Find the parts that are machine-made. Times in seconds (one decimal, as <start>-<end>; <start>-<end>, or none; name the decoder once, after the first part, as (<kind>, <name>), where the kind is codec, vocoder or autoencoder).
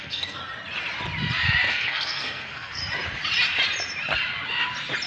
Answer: 0.0-0.4 (codec, SNAC); 1.7-2.8